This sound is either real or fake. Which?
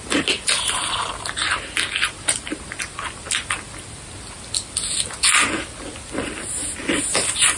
real